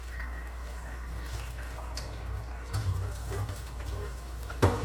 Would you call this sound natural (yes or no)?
no